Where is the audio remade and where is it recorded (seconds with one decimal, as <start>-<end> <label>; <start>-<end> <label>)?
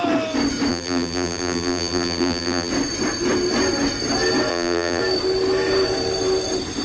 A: 0.0-0.7 recorded; 0.7-2.7 remade; 2.7-4.5 recorded; 4.5-5.0 remade; 5.0-6.8 recorded